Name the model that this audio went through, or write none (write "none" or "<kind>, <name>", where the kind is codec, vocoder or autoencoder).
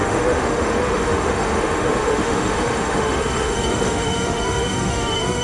autoencoder, DAC-VAE